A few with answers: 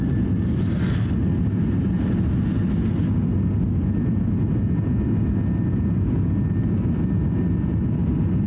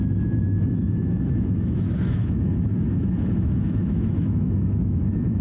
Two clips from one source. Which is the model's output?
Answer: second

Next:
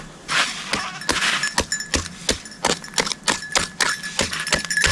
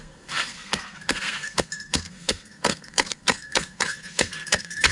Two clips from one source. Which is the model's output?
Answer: second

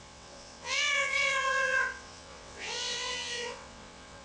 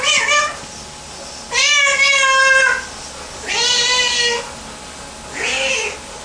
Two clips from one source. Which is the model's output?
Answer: first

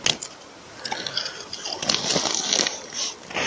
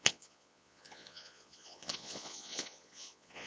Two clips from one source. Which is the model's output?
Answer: second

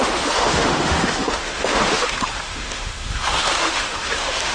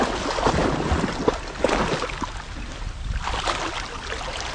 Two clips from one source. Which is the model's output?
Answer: first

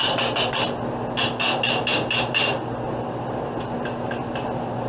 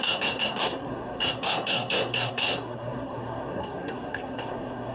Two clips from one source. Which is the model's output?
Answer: second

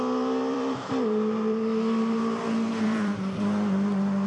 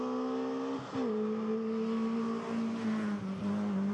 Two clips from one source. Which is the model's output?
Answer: first